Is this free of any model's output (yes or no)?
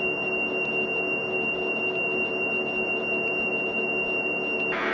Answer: yes